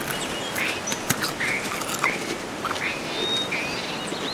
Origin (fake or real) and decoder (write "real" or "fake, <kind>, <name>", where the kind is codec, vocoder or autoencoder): real